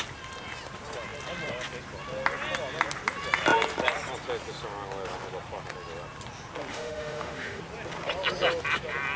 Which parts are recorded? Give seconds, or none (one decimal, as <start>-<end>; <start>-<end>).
0.0-6.7; 7.6-9.2